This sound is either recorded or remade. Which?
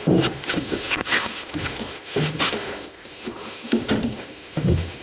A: remade